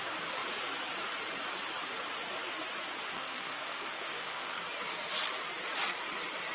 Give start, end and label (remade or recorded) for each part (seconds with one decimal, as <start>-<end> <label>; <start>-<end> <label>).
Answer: 0.0-3.1 recorded; 3.1-4.6 remade; 4.6-6.5 recorded